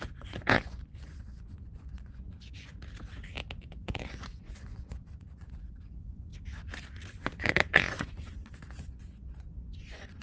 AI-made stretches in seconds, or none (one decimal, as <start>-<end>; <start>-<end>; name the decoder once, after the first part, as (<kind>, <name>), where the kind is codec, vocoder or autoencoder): 0.0-2.7 (vocoder, Vocos); 3.6-6.3; 7.1-10.2